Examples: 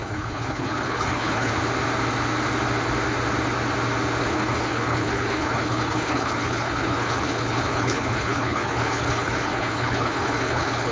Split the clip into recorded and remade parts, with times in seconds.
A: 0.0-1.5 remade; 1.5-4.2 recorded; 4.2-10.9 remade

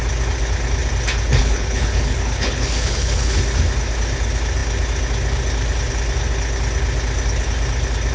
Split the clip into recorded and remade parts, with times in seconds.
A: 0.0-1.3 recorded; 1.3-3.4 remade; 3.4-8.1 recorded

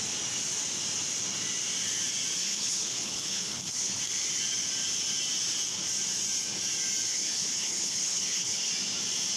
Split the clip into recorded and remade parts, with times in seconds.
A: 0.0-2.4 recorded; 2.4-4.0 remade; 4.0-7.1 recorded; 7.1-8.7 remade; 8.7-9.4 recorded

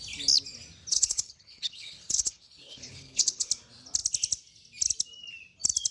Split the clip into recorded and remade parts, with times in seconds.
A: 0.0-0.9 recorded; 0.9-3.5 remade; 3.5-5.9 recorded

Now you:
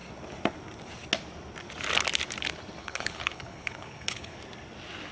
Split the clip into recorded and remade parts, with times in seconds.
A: 0.0-2.8 recorded; 2.8-4.4 remade; 4.4-5.1 recorded

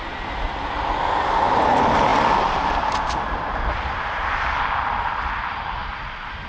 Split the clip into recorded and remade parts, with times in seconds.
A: 0.0-6.5 recorded